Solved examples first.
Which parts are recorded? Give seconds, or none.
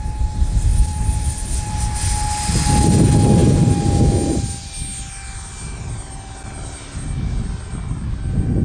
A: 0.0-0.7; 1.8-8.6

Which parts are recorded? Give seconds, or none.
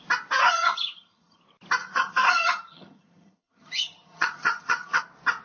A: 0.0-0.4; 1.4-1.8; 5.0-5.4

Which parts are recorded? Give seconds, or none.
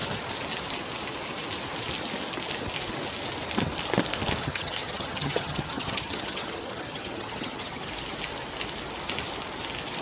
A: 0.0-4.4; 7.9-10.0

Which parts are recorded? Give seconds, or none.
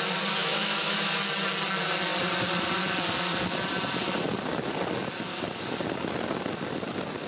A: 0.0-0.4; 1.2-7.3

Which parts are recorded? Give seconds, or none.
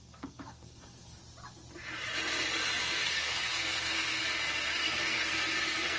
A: 1.2-2.8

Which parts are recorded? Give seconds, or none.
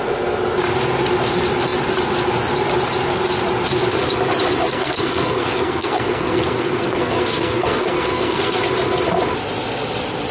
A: 0.0-4.7; 8.6-10.3